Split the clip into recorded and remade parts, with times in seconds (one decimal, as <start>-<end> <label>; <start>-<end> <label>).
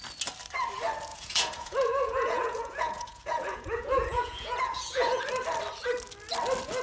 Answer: 0.0-1.1 recorded; 1.1-5.2 remade; 5.2-6.8 recorded